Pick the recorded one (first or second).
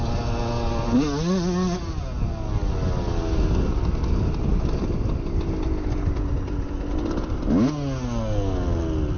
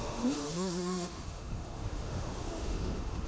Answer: first